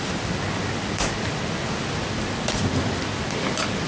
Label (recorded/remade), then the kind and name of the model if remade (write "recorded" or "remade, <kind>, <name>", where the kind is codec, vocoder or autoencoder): recorded